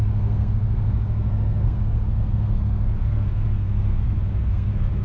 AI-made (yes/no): yes